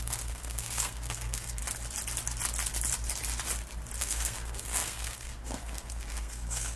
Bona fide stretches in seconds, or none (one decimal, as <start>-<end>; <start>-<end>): 1.6-4.0